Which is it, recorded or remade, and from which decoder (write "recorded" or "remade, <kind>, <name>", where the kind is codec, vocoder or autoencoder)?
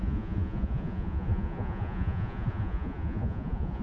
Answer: remade, vocoder, Vocos